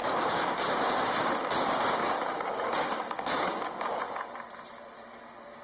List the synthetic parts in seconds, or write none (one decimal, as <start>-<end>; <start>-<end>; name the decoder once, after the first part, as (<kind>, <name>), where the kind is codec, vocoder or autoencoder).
0.0-1.5 (codec, DAC); 2.0-4.0